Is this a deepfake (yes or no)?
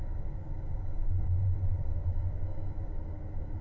no